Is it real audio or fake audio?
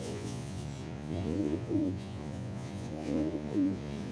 fake